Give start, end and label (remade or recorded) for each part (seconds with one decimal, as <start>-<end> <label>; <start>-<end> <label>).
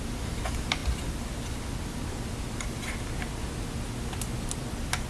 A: 0.0-5.1 recorded